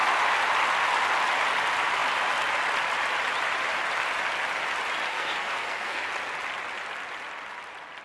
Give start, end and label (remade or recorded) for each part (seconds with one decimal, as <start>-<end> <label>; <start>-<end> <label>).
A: 0.0-5.1 recorded; 5.1-6.1 remade; 6.1-8.0 recorded